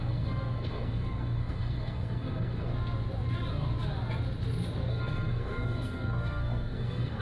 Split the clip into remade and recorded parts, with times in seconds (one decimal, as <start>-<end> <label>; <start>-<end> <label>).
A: 0.0-2.7 remade; 2.7-4.9 recorded; 4.9-7.2 remade